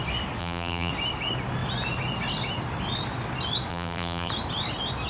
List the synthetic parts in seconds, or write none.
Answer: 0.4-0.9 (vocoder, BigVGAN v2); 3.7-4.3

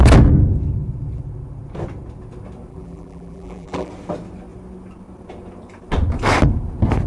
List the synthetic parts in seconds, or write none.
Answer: 2.7-3.9 (vocoder, BigVGAN v2)

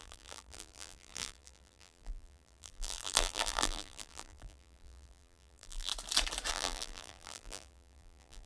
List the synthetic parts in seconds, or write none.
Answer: 0.0-5.9 (vocoder, BigVGAN v2); 6.5-8.5

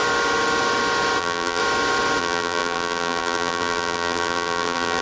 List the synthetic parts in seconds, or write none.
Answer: 1.2-1.6 (vocoder, BigVGAN v2); 2.2-5.0

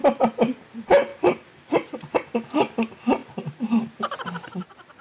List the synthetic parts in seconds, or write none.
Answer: 1.1-2.1 (vocoder, BigVGAN v2); 3.2-3.8

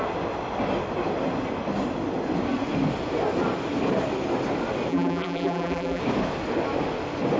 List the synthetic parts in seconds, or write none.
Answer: 4.9-6.0 (vocoder, BigVGAN v2)